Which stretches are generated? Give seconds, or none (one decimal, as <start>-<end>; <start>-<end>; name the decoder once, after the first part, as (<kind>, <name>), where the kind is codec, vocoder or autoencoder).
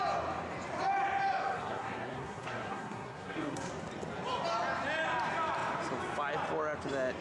1.6-3.7 (codec, SNAC)